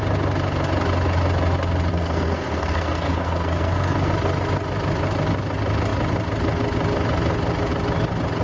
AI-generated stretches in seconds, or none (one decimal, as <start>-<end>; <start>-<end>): 1.9-4.1